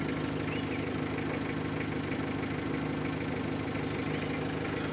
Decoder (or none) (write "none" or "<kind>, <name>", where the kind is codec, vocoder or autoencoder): none